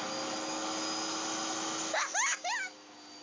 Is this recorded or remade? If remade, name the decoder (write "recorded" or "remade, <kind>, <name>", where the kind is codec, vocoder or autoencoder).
recorded